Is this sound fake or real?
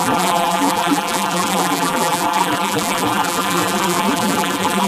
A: fake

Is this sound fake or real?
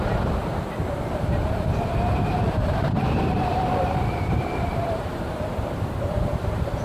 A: fake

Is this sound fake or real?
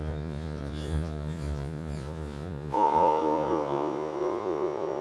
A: fake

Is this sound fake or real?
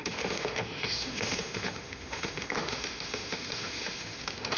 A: fake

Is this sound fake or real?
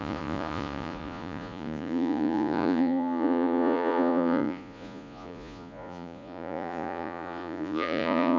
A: fake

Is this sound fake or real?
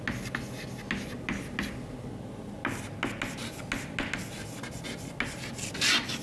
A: real